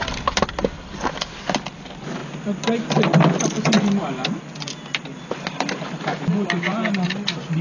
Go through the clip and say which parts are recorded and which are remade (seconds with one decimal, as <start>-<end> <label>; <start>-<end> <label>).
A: 0.0-7.6 recorded